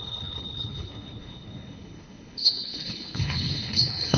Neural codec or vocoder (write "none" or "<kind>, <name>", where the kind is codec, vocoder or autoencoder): codec, HILCodec